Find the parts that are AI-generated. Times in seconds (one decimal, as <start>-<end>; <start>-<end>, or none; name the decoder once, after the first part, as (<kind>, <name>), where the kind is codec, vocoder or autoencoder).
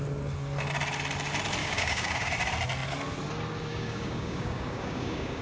1.6-2.3 (codec, DAC); 3.7-5.4